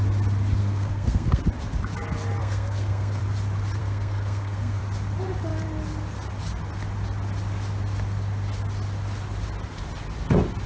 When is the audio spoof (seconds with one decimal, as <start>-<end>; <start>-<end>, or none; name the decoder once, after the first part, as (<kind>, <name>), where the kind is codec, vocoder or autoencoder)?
0.6-1.4 (codec, SNAC); 2.4-3.2; 3.8-4.8